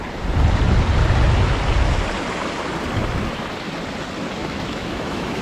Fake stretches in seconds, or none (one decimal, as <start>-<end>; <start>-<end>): 4.4-5.4

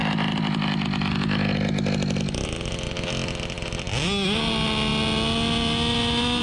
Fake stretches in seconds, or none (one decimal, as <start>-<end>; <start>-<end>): none

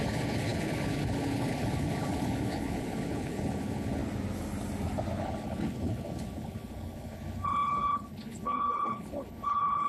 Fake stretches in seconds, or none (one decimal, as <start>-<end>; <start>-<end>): 0.0-4.0; 5.2-9.9

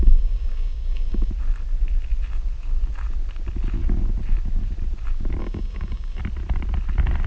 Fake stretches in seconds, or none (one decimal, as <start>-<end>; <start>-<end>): 0.0-1.3; 5.4-6.2

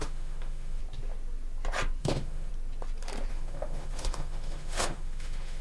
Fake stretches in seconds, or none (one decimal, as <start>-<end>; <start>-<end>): 0.0-0.8; 2.0-2.5; 3.3-5.6

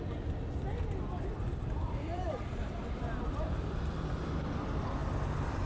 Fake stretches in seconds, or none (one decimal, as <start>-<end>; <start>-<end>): 1.8-4.4; 5.0-5.7

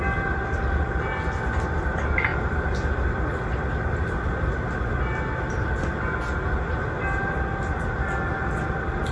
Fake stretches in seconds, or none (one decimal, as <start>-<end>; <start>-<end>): none